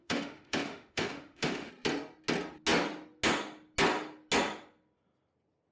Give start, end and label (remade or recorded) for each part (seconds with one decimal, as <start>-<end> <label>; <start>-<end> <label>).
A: 0.0-1.7 remade; 1.7-5.7 recorded